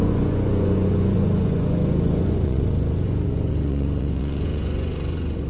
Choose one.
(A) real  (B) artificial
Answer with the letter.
B